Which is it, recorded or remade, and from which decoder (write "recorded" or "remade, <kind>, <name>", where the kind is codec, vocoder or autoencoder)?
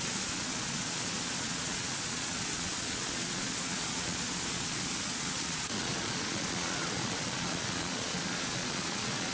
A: remade, vocoder, Vocos